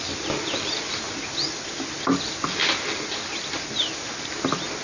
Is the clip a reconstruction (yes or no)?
no